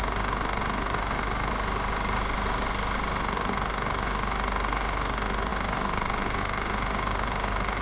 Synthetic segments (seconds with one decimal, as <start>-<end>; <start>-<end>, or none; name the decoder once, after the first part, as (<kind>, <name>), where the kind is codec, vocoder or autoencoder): 0.0-1.5 (autoencoder, DAC-VAE); 3.2-7.8